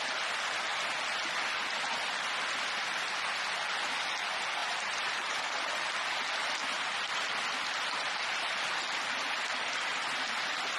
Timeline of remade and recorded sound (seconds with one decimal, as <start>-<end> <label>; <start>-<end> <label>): 0.0-4.6 recorded; 4.6-5.9 remade; 5.9-10.8 recorded